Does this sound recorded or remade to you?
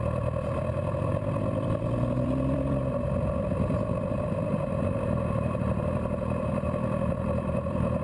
remade